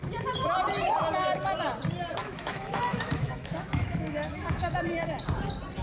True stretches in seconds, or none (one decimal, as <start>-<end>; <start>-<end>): 0.0-2.2; 4.7-5.8